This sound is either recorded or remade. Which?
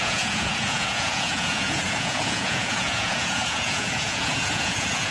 remade